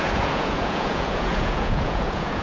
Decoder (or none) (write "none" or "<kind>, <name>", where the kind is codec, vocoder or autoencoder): vocoder, Vocos